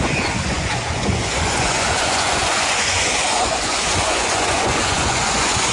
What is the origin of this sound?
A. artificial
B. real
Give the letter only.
A